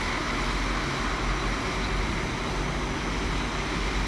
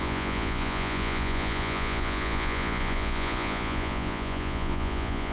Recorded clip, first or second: first